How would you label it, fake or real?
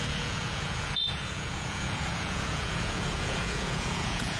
fake